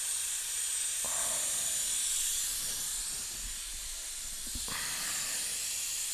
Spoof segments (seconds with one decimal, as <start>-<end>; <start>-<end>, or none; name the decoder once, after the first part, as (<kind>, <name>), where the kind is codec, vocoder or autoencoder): 3.7-5.0 (vocoder, BigVGAN v2)

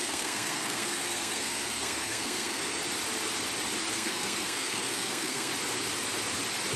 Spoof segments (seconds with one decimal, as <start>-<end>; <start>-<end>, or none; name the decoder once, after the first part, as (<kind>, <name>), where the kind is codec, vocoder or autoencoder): 0.0-2.8 (codec, SNAC); 3.9-5.5